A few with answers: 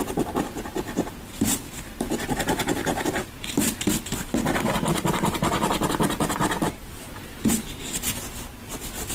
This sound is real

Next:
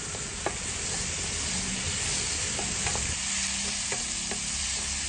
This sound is real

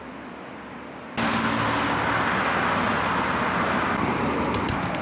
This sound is real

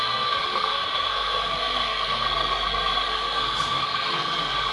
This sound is fake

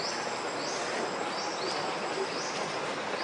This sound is real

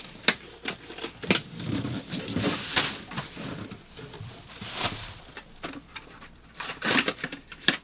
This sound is fake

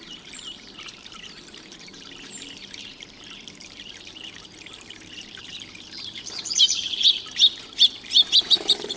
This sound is fake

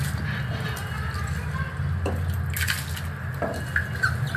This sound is real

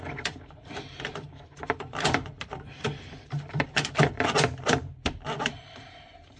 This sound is fake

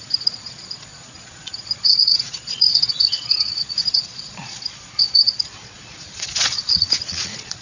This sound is fake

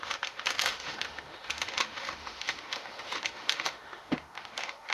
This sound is fake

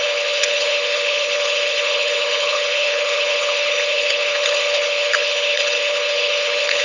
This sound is fake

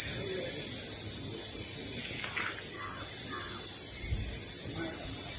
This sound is real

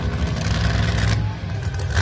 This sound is real